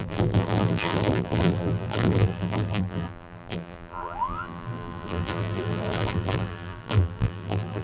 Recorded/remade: remade